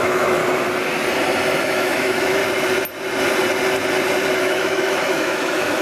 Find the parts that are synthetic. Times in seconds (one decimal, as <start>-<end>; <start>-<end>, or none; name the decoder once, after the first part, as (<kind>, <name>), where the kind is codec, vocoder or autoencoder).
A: 0.0-0.4 (autoencoder, DAC-VAE); 1.6-2.4; 4.4-5.8